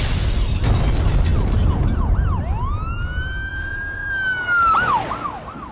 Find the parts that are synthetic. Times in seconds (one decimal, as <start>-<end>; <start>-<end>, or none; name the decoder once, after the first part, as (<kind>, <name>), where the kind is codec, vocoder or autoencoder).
3.5-4.1 (vocoder, Vocos)